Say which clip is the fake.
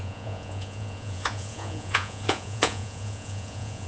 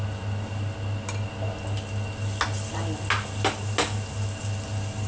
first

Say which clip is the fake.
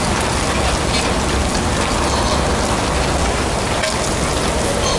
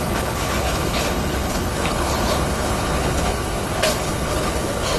second